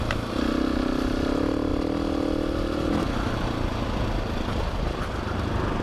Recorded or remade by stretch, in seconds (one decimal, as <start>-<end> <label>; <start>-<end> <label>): 0.0-5.8 recorded